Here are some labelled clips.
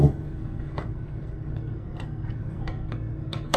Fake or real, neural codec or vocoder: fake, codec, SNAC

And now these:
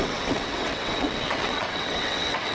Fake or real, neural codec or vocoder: fake, vocoder, WaveNeXt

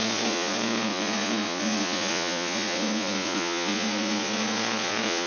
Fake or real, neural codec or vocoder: fake, vocoder, Vocos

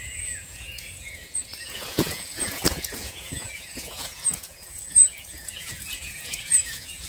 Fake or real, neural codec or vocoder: fake, vocoder, Vocos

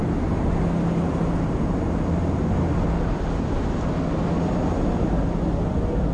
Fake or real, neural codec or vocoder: real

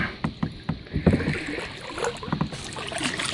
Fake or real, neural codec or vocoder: real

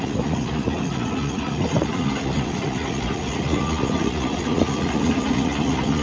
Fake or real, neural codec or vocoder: fake, vocoder, Vocos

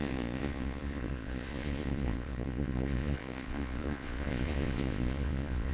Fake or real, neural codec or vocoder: fake, vocoder, Vocos